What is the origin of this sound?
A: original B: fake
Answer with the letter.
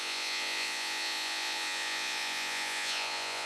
B